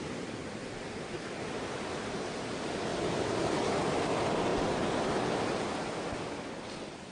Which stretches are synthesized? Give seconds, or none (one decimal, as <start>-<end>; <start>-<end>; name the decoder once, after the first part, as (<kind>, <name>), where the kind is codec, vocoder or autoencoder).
none